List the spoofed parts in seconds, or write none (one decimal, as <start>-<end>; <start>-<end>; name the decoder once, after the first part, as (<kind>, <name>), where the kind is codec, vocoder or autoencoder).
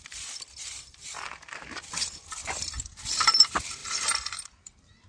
3.8-5.1 (vocoder, BigVGAN v2)